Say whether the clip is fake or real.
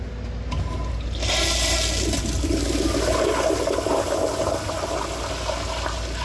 real